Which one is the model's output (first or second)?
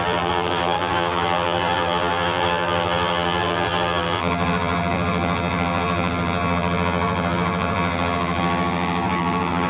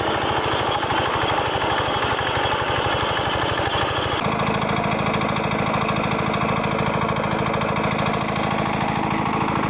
first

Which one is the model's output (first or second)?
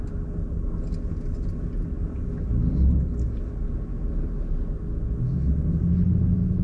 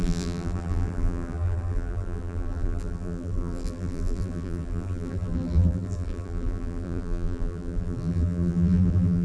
second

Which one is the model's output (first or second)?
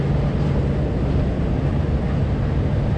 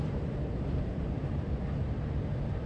second